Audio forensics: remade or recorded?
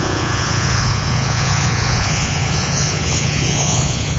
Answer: remade